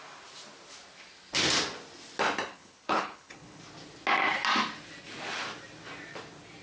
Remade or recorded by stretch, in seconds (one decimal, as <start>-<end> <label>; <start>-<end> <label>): 0.0-2.5 recorded; 2.5-3.6 remade; 3.6-6.6 recorded